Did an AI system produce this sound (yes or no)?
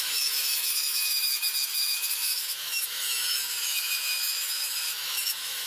yes